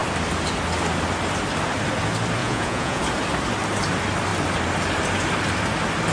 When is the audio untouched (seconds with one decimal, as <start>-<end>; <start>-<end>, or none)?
0.0-2.4; 3.0-6.1